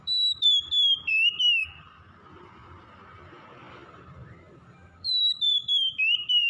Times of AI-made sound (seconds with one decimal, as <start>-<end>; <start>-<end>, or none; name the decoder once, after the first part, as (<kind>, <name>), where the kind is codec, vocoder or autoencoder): 0.0-1.6 (vocoder, BigVGAN v2); 3.7-6.5